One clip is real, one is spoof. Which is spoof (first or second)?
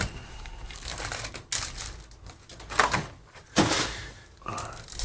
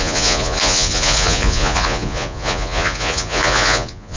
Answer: second